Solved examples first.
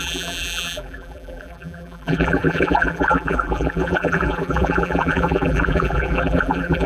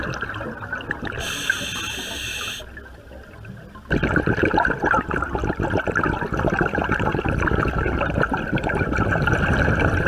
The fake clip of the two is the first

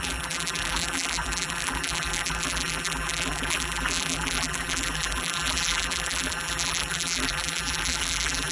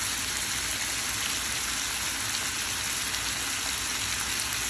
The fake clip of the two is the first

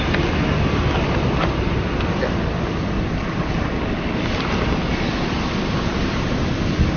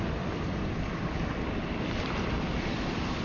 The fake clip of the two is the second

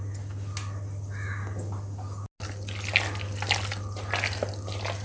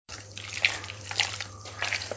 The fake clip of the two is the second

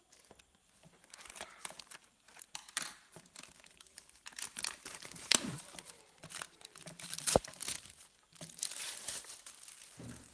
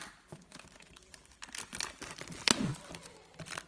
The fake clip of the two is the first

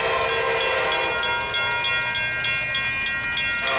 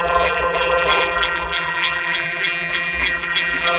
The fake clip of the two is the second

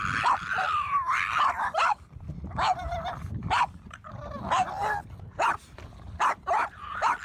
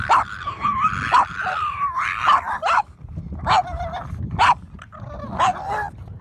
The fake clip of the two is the first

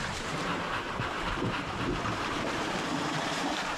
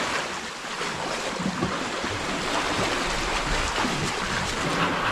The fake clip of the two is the first